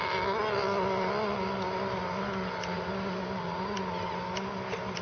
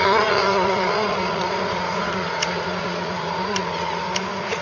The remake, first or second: second